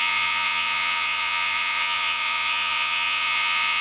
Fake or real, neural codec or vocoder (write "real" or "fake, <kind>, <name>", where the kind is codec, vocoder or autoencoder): fake, vocoder, Vocos